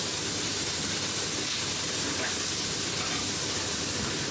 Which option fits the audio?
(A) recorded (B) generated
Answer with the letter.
A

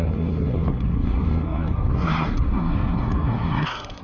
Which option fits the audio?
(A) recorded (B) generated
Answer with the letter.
B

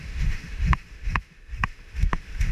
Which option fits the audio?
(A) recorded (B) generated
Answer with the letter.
B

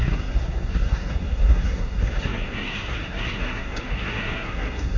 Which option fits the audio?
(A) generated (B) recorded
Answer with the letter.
A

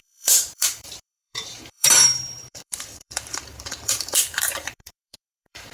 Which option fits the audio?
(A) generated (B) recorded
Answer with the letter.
A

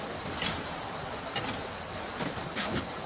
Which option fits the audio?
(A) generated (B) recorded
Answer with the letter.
B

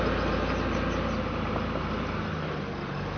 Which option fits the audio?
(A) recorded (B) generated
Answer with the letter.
A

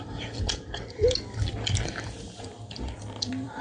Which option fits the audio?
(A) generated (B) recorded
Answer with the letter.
A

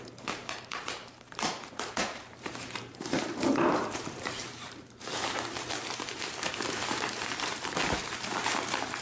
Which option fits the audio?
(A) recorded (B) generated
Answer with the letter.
B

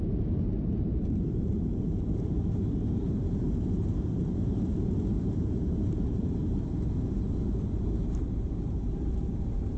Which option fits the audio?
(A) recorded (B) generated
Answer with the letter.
B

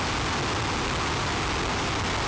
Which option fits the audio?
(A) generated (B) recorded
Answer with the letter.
B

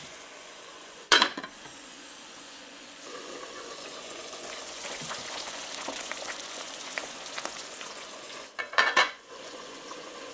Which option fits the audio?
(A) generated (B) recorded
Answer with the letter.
A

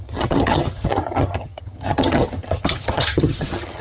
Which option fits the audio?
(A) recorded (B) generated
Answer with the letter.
B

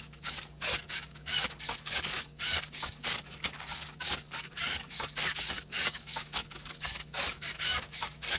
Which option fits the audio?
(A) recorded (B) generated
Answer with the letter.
B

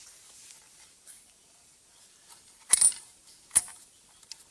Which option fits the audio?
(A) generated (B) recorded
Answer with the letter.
A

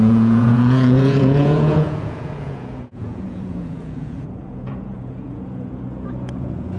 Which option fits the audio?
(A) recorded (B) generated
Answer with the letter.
B